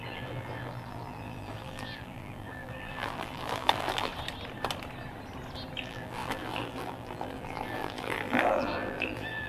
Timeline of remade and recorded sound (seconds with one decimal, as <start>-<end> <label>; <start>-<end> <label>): 0.0-4.1 remade; 4.1-5.8 recorded; 5.8-9.5 remade